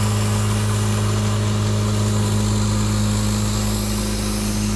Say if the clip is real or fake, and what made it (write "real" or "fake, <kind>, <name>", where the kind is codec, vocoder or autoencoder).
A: real